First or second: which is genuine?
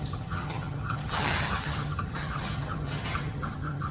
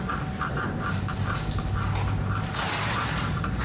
second